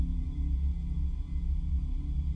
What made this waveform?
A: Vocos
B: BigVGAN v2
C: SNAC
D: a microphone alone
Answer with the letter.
D